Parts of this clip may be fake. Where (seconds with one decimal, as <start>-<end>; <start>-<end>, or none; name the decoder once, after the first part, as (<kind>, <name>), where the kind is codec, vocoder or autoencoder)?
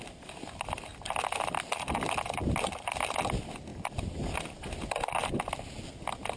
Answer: none